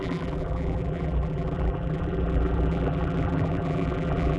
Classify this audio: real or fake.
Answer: fake